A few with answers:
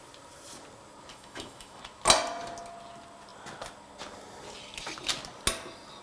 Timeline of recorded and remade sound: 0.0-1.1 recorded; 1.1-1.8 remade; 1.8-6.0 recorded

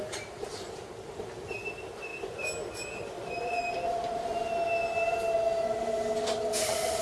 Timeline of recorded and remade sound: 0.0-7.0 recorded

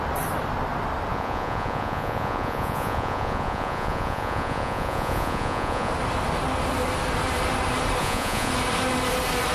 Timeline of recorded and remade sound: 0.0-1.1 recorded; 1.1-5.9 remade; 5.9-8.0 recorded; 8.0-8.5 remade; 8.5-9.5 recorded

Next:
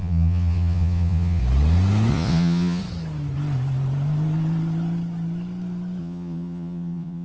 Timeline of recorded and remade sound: 0.0-1.4 remade; 1.4-2.1 recorded; 2.1-2.8 remade; 2.8-6.0 recorded; 6.0-7.2 remade

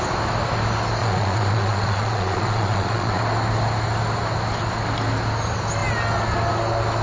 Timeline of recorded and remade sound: 0.0-1.0 recorded; 1.0-3.2 remade; 3.2-7.0 recorded